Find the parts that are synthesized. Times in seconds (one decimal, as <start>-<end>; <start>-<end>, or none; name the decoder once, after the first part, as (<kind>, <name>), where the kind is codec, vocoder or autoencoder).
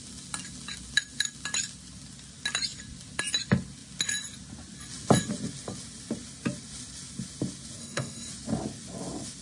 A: 7.8-8.3 (codec, SNAC)